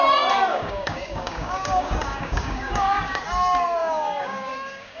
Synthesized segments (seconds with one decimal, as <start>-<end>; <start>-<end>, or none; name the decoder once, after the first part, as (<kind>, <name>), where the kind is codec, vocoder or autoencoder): 0.5-3.2 (codec, DAC); 3.8-5.0